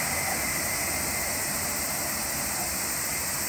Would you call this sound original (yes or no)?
yes